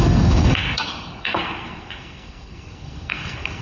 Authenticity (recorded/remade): remade